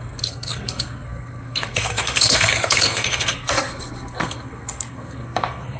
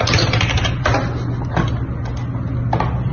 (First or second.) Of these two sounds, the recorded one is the second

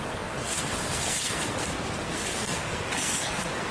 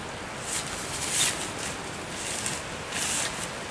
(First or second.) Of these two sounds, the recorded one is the second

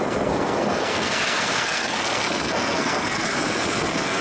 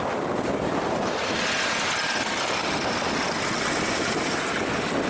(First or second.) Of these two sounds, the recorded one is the second